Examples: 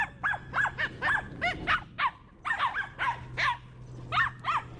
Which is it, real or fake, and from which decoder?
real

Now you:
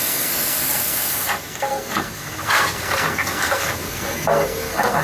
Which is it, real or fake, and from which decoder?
fake, codec, SNAC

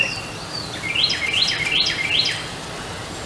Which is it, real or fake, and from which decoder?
real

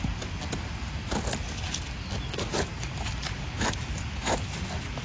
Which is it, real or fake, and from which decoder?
real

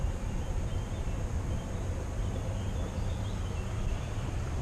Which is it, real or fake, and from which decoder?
real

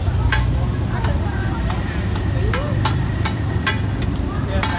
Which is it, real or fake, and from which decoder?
real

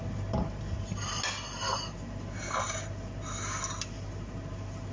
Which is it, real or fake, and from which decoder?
real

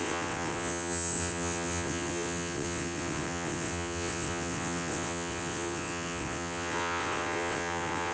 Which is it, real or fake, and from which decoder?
fake, vocoder, WaveNeXt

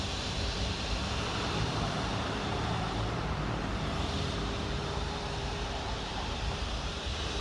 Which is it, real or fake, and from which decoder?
fake, vocoder, BigVGAN v2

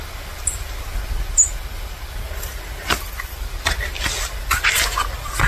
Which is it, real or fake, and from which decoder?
real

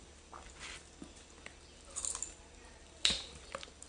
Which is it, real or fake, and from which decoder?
real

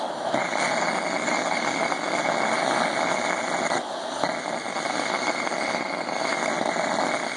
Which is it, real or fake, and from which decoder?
real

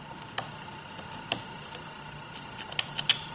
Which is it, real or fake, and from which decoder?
real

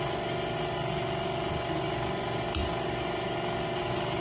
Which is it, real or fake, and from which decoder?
real